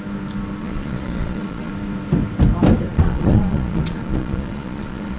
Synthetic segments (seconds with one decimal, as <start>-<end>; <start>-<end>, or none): 0.6-1.7; 2.9-5.2